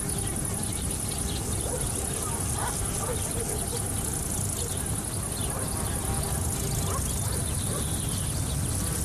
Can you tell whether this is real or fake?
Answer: real